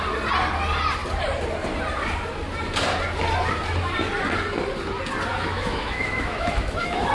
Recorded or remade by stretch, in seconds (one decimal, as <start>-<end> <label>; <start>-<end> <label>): 0.0-5.3 recorded; 5.3-7.1 remade